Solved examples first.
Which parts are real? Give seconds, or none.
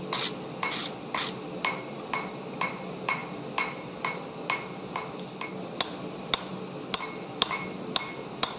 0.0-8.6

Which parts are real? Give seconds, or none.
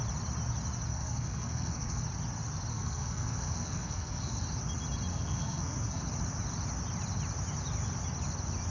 0.0-0.9; 2.0-2.7; 4.3-5.1; 6.0-8.7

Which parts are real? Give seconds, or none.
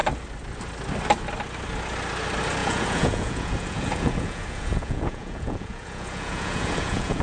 0.0-2.6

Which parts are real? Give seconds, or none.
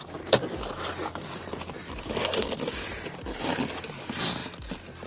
0.0-1.0; 3.7-5.1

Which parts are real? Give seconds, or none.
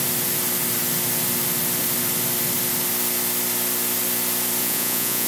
0.0-4.6